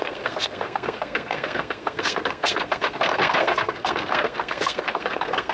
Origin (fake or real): fake